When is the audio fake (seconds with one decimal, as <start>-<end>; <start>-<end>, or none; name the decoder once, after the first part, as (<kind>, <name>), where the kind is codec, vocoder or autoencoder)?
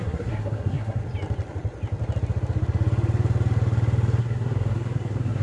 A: 0.0-1.0 (codec, SNAC); 4.2-5.4